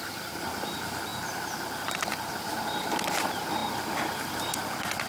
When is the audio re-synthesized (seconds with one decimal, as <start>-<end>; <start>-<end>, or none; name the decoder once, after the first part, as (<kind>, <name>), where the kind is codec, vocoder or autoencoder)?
0.0-5.1 (vocoder, BigVGAN v2)